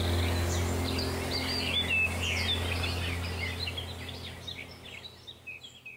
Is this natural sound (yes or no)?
yes